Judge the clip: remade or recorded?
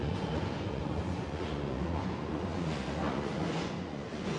remade